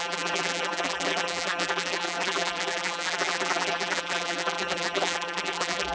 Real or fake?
fake